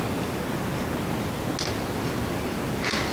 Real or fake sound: real